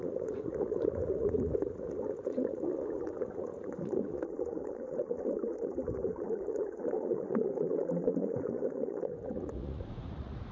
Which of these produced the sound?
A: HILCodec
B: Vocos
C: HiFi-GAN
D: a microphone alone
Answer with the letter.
B